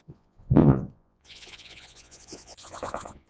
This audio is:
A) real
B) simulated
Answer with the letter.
B